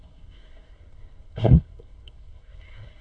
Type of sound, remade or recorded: remade